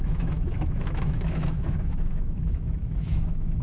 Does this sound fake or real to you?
fake